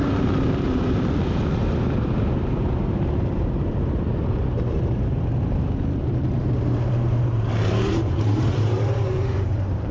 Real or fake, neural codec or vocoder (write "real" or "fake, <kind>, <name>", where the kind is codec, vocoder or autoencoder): fake, vocoder, BigVGAN v2